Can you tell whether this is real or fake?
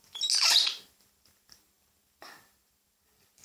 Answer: real